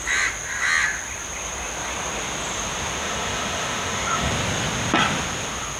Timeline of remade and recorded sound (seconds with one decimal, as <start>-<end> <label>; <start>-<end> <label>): 0.0-3.0 recorded; 3.0-4.3 remade; 4.3-5.8 recorded